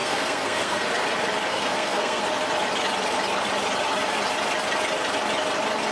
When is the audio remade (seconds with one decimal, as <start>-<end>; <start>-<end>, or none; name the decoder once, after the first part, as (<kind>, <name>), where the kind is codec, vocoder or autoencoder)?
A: 0.0-0.9 (codec, SNAC); 1.5-2.2